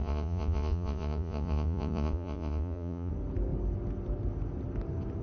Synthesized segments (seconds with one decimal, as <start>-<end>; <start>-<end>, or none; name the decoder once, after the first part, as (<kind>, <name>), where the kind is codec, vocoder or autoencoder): 0.0-3.1 (vocoder, Vocos)